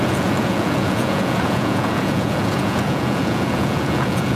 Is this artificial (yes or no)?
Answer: yes